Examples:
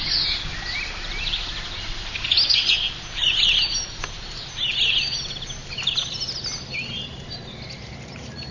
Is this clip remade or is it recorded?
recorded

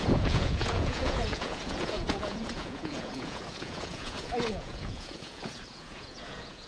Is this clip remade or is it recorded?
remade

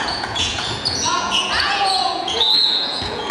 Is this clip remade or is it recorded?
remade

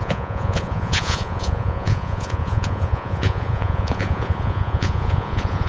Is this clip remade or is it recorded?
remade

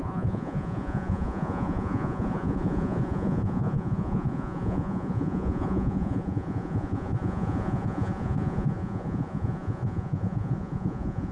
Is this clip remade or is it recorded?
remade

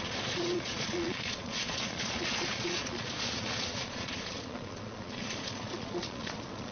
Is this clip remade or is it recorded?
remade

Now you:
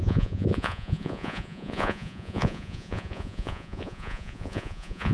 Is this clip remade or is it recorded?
remade